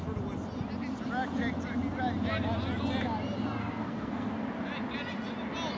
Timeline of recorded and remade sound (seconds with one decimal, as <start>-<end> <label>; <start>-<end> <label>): 0.0-3.6 recorded; 3.6-4.3 remade; 4.3-5.8 recorded

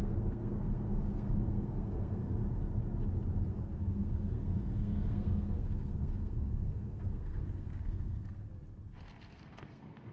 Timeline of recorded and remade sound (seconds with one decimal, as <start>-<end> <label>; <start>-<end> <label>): 0.0-2.4 remade; 2.4-3.5 recorded; 3.5-8.5 remade; 8.5-9.2 recorded; 9.2-10.1 remade

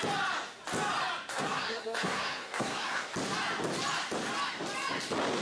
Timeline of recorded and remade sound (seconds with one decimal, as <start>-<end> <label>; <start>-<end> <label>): 0.0-1.3 recorded; 1.3-3.1 remade; 3.1-5.4 recorded